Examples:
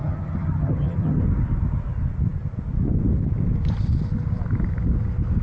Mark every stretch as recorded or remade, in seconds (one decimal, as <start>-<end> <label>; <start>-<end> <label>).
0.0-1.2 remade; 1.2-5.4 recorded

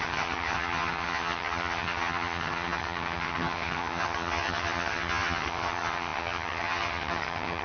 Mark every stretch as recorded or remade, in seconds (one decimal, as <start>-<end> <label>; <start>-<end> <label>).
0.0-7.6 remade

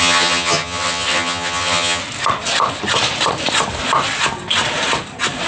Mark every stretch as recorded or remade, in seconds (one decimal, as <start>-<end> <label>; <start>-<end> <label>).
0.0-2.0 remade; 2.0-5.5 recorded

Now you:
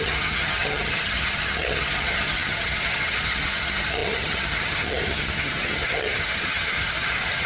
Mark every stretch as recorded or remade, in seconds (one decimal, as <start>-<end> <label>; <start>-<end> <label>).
0.0-7.5 remade